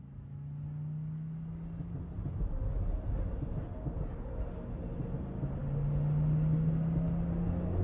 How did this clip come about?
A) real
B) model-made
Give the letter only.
A